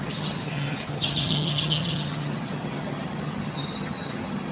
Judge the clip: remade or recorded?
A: remade